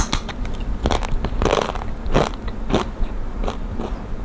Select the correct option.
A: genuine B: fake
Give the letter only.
A